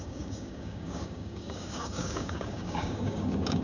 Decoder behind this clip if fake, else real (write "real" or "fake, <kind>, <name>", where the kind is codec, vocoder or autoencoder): fake, codec, DAC